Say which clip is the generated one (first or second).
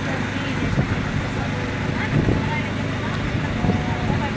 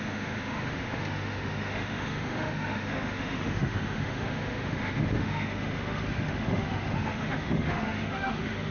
second